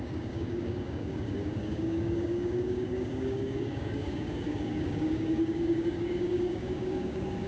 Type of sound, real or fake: fake